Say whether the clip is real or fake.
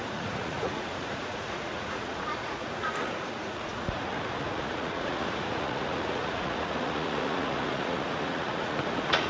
fake